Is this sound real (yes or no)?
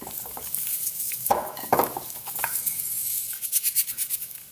no